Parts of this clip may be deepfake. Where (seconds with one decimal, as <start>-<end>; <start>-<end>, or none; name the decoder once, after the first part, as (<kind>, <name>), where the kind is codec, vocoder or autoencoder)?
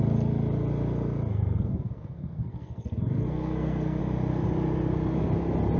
1.3-4.0 (codec, SNAC)